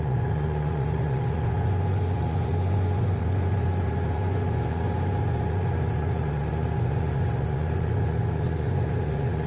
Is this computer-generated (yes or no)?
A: yes